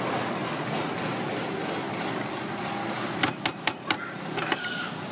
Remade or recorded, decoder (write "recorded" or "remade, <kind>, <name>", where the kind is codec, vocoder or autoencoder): recorded